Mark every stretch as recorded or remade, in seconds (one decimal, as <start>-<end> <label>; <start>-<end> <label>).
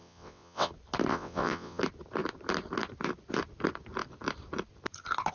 0.0-0.7 remade; 0.7-1.1 recorded; 1.1-1.8 remade; 1.8-5.3 recorded